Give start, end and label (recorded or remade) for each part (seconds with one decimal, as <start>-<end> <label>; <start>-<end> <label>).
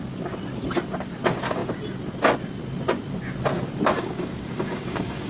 0.0-3.9 recorded; 3.9-5.3 remade